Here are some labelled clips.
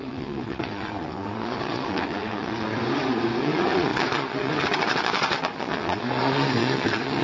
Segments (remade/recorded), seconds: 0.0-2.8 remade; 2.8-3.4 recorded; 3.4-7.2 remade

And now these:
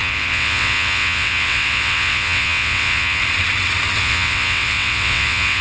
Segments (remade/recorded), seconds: 0.0-3.2 remade; 3.2-4.0 recorded; 4.0-5.6 remade

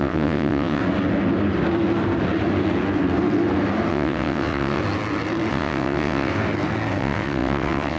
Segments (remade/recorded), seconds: 0.0-0.8 remade; 0.8-3.9 recorded; 3.9-4.8 remade; 4.8-5.5 recorded; 5.5-6.3 remade; 6.3-7.0 recorded; 7.0-8.0 remade